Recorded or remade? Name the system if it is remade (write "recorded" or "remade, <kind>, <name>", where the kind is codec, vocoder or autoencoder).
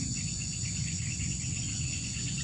remade, vocoder, Vocos